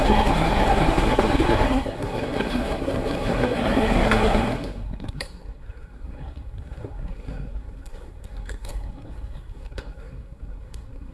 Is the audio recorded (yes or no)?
no